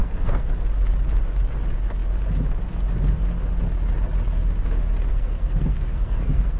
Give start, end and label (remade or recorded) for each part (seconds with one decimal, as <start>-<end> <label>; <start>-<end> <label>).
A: 0.0-0.5 remade; 0.5-5.1 recorded; 5.1-6.6 remade